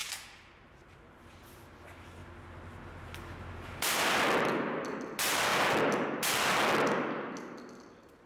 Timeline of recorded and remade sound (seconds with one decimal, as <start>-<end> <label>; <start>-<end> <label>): 0.0-1.2 remade; 1.2-8.3 recorded